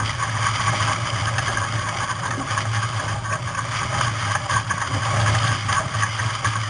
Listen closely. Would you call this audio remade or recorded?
recorded